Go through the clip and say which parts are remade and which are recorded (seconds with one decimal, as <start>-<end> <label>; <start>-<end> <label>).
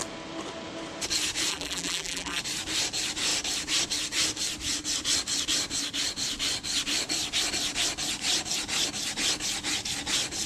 0.0-1.5 recorded; 1.5-2.4 remade; 2.4-10.5 recorded